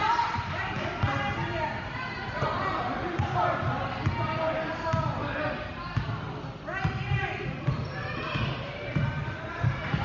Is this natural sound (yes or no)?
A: yes